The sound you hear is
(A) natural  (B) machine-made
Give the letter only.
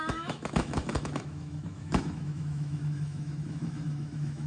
B